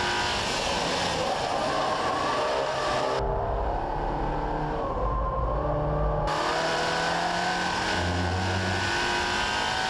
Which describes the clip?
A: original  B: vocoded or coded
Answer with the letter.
A